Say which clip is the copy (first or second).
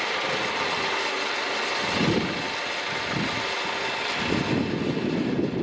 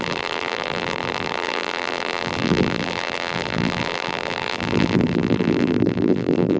second